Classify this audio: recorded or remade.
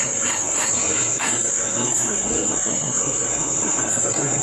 remade